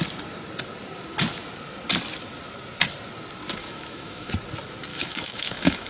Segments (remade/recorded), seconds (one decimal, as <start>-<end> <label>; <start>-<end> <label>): 0.0-3.6 recorded; 3.6-4.3 remade; 4.3-4.9 recorded; 4.9-5.9 remade